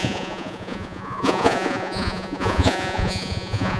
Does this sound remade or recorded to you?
remade